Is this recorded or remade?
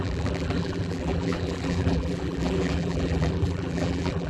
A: remade